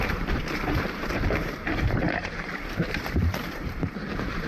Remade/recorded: remade